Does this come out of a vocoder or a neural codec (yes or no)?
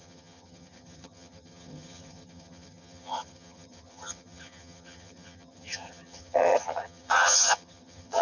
yes